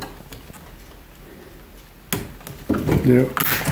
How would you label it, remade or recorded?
recorded